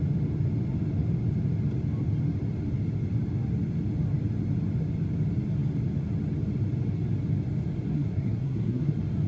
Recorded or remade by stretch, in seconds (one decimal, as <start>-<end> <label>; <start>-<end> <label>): 0.0-7.9 recorded; 7.9-8.9 remade; 8.9-9.3 recorded